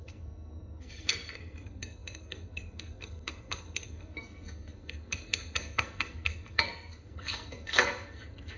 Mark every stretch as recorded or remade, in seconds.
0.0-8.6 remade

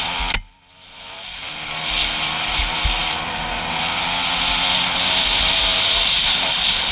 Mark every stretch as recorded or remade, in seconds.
0.0-6.9 recorded

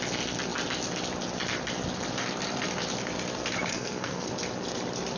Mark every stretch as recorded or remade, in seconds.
0.0-3.7 recorded; 3.7-4.3 remade; 4.3-5.2 recorded

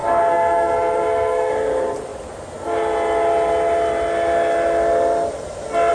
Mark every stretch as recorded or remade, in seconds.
0.0-1.5 remade; 1.5-5.9 recorded